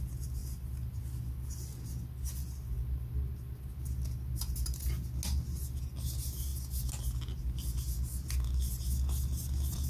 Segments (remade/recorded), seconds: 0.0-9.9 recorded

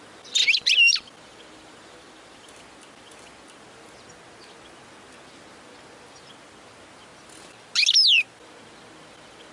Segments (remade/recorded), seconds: 0.0-0.4 recorded; 0.4-2.6 remade; 2.6-9.5 recorded